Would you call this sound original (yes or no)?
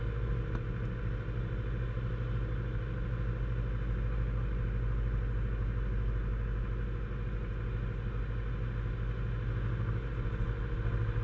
yes